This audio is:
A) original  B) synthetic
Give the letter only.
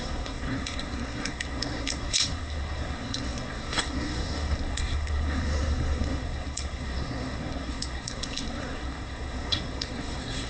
B